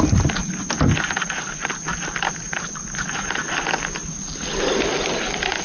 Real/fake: real